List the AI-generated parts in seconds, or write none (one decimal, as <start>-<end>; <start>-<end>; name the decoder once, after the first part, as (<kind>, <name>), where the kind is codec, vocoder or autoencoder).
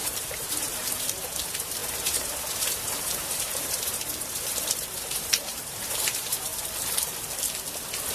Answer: 0.0-6.5 (vocoder, BigVGAN v2)